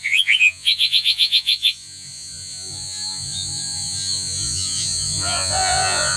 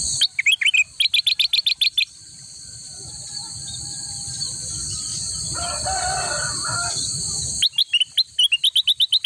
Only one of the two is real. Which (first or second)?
second